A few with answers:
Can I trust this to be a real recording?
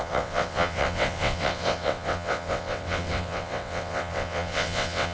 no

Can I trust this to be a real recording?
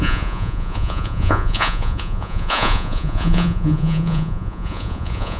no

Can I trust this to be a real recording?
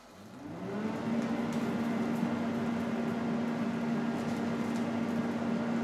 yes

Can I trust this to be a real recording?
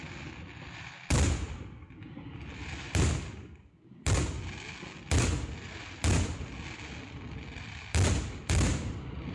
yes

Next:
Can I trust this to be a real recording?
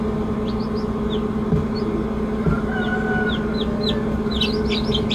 yes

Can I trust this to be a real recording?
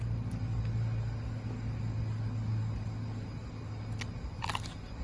yes